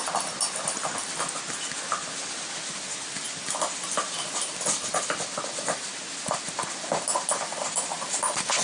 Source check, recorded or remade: recorded